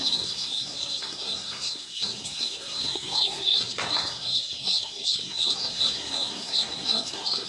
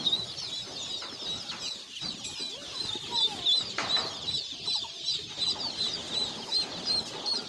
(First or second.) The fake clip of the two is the first